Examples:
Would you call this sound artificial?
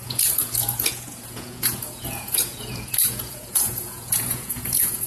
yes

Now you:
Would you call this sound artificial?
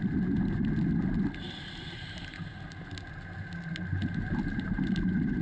no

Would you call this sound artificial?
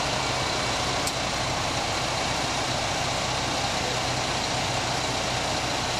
no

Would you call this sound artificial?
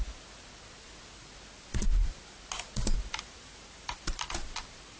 no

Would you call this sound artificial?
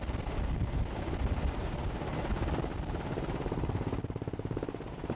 no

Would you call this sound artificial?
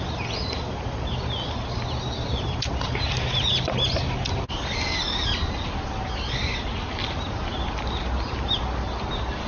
no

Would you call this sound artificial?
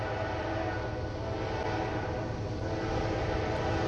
no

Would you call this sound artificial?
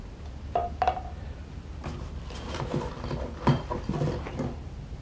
no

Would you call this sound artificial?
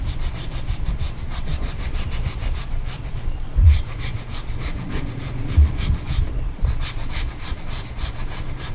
yes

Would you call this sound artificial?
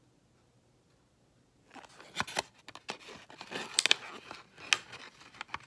no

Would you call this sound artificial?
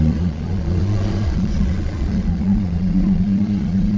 yes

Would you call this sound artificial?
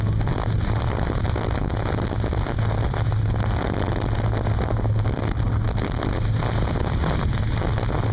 no